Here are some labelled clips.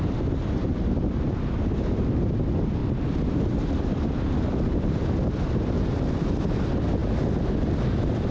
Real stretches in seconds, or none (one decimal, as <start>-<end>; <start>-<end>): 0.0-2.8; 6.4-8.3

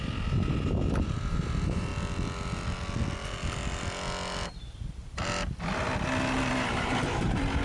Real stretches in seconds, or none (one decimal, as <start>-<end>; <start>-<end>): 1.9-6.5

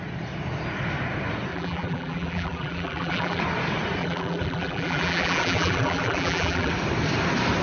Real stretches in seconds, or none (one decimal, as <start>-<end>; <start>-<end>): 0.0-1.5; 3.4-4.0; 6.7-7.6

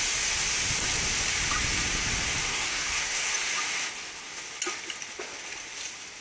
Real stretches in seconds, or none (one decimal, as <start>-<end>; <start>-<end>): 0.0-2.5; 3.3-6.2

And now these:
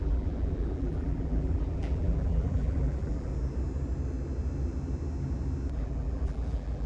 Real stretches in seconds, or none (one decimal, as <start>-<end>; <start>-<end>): 3.3-5.7

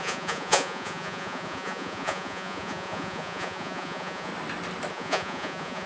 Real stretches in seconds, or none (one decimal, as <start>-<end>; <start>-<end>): 4.3-4.9